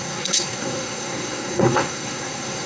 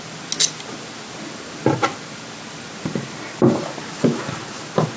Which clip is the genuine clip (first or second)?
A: second